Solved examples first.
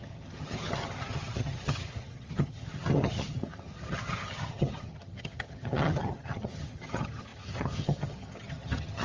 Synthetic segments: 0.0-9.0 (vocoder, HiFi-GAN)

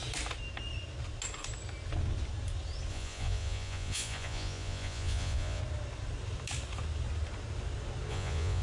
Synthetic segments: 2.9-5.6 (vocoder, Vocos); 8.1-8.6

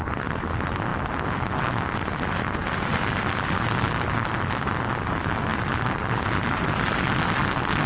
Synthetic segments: none

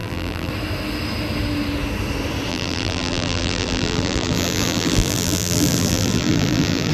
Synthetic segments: 0.0-0.5 (vocoder, BigVGAN v2); 2.5-6.9